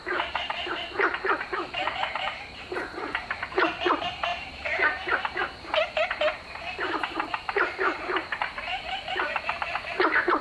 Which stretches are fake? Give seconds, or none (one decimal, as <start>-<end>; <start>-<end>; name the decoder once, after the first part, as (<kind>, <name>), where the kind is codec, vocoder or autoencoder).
0.0-10.4 (vocoder, BigVGAN v2)